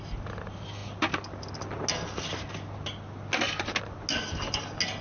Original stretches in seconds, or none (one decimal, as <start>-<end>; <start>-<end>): 0.0-5.0

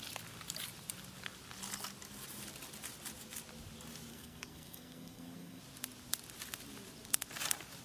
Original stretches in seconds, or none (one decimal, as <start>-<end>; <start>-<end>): 0.0-4.1; 5.6-7.8

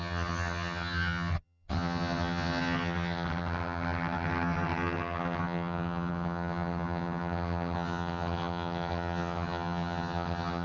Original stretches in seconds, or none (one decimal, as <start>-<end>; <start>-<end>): none